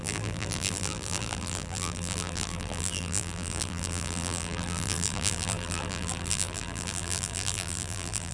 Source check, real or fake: fake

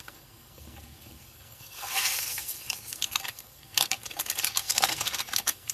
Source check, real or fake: fake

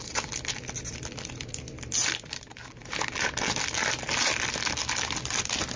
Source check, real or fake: real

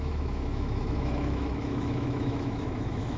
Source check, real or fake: fake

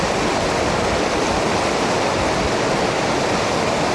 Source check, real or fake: real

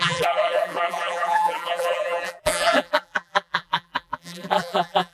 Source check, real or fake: fake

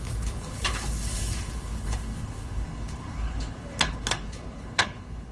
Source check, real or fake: fake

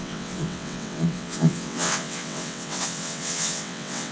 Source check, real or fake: fake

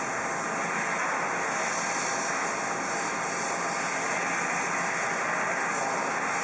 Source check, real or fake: real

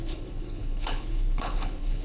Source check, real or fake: fake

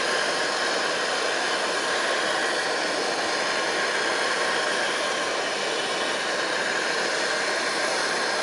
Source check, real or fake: real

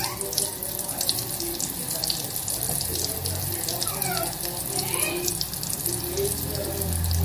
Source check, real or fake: real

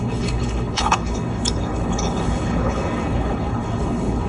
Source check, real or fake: fake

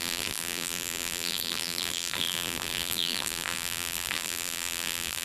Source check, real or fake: fake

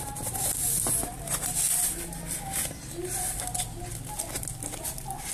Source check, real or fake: real